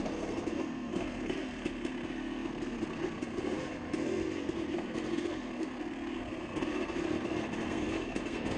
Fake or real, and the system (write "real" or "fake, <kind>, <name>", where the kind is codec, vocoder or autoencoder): fake, codec, SNAC